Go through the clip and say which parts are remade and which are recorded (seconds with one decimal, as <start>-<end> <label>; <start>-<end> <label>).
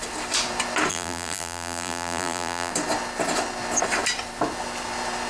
0.0-0.9 recorded; 0.9-2.7 remade; 2.7-5.3 recorded